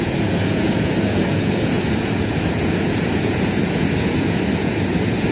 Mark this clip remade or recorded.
remade